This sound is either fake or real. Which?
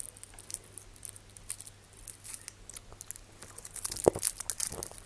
real